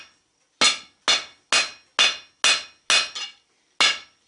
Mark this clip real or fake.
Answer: real